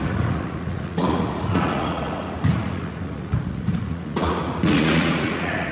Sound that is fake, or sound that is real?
fake